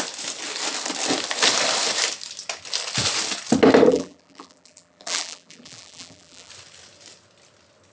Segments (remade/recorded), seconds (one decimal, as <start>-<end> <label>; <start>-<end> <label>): 0.0-3.9 recorded; 3.9-6.5 remade; 6.5-7.9 recorded